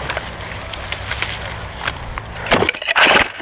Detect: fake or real real